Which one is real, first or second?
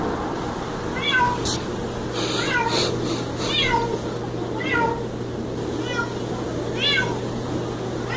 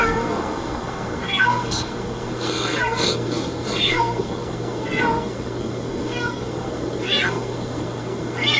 first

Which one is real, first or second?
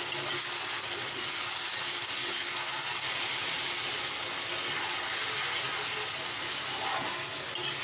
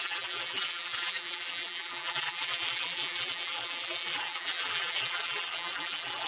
first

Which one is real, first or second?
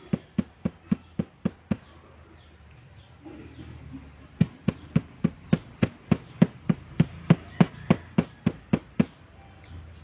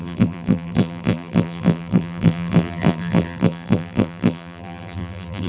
first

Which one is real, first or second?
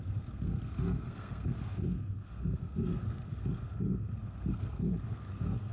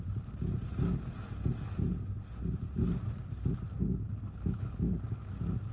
second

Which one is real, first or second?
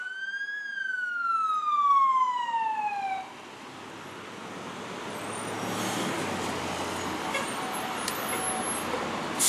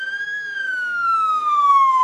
first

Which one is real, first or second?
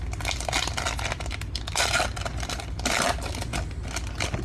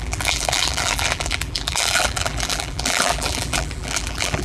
first